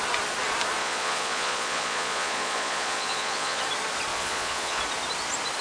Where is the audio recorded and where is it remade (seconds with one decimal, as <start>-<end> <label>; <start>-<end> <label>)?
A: 0.0-0.8 recorded; 0.8-3.6 remade; 3.6-4.1 recorded; 4.1-4.8 remade; 4.8-5.6 recorded